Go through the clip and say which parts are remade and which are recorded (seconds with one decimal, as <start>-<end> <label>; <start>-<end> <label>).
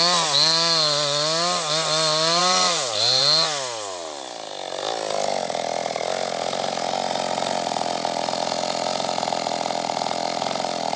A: 0.0-2.4 recorded; 2.4-3.2 remade; 3.2-11.0 recorded